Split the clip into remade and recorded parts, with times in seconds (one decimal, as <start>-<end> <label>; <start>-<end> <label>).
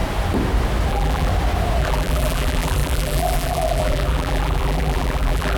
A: 0.0-0.9 recorded; 0.9-1.3 remade; 1.3-1.8 recorded; 1.8-5.6 remade